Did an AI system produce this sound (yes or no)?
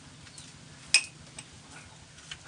no